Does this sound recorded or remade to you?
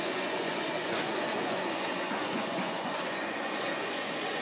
remade